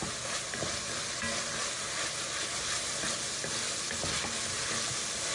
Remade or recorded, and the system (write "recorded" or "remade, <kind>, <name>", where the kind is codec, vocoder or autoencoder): recorded